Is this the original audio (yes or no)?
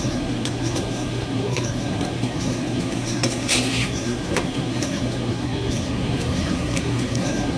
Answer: no